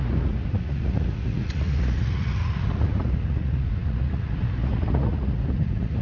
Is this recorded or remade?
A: remade